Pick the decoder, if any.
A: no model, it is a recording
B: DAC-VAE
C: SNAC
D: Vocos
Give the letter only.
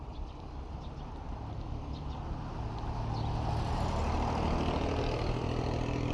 A